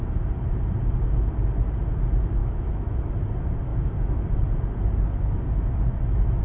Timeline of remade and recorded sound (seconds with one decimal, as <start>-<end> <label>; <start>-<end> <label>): 0.0-2.4 recorded; 2.4-3.0 remade; 3.0-6.4 recorded